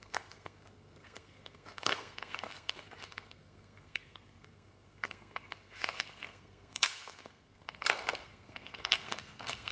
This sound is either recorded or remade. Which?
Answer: remade